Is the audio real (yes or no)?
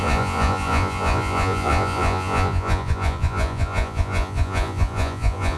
no